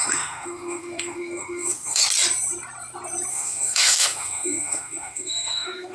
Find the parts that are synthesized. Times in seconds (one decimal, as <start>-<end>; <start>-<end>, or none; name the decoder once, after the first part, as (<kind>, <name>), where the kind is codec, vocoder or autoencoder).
0.0-2.0 (autoencoder, DAC-VAE); 3.3-5.9